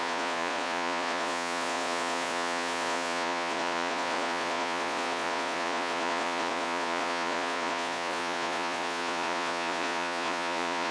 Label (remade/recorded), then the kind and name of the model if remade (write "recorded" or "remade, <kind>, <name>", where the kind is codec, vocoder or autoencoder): remade, vocoder, Vocos